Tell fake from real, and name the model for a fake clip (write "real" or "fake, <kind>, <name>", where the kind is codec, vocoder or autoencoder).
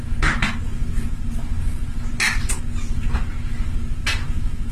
real